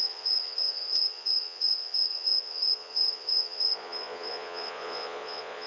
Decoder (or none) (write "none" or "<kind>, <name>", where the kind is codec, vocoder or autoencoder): vocoder, Vocos